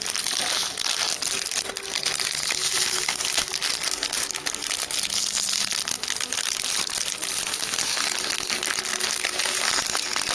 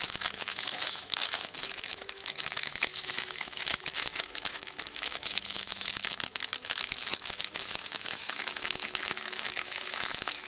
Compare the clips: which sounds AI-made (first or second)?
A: second